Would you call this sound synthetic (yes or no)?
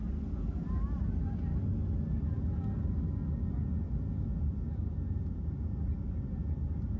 no